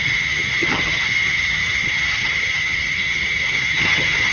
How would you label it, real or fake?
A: fake